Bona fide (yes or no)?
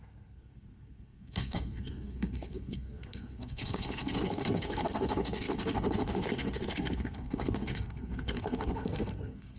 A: no